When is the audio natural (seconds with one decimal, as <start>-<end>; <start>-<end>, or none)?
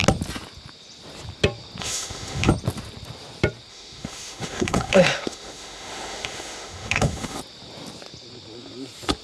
0.0-1.8; 2.5-3.7; 7.4-9.2